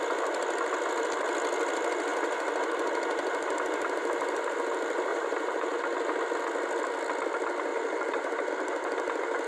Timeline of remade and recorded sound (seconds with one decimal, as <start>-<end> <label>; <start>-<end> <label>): 0.0-5.1 recorded; 5.1-5.8 remade; 5.8-7.7 recorded; 7.7-8.5 remade; 8.5-9.5 recorded